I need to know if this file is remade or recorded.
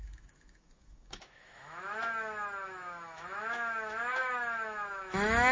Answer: remade